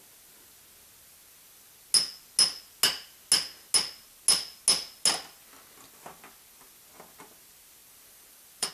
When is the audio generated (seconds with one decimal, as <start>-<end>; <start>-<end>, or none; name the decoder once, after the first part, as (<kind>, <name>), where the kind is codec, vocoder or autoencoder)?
7.8-8.7 (vocoder, BigVGAN v2)